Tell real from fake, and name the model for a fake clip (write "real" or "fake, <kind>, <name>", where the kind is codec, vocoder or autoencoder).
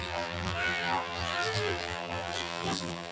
fake, vocoder, BigVGAN v2